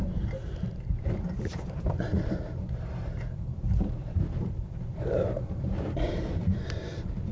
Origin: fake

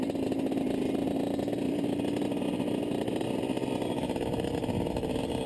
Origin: real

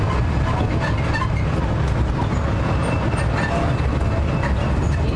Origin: real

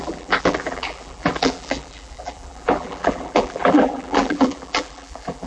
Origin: fake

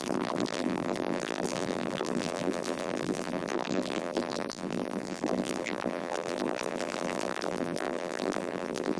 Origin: fake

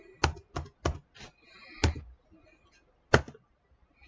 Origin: real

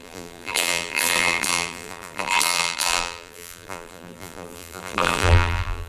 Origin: fake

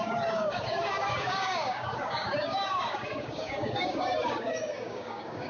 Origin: fake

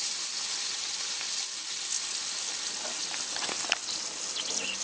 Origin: real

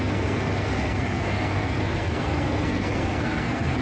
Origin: fake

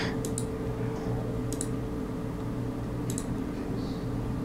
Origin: real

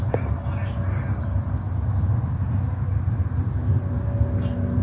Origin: real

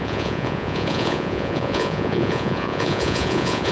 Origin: fake